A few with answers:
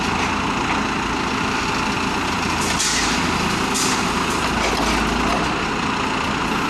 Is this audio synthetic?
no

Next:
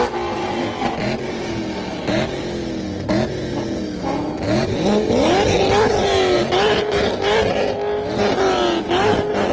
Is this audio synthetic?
no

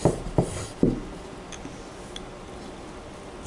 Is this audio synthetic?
no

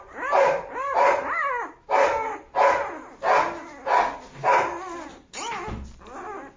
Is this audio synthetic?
no